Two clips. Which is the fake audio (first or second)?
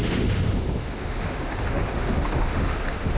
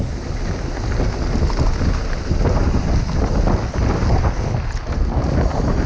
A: first